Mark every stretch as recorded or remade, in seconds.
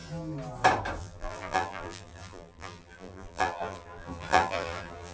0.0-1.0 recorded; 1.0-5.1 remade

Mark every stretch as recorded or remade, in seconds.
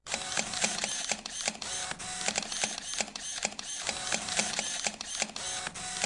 0.0-1.9 remade; 1.9-3.1 recorded; 3.1-5.1 remade; 5.1-6.1 recorded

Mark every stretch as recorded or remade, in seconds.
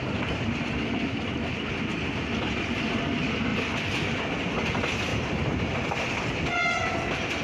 0.0-3.5 recorded; 3.5-4.2 remade; 4.2-7.4 recorded